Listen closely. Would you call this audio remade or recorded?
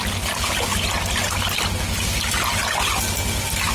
recorded